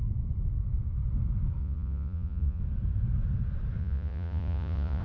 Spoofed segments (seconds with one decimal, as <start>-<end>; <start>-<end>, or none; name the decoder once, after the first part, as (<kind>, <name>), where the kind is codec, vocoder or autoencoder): 1.6-2.6 (vocoder, Vocos); 3.8-5.0